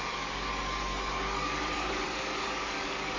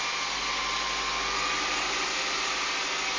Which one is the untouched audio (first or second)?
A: second